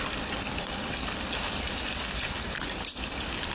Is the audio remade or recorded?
recorded